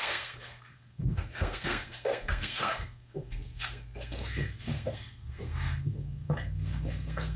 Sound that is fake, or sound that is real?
fake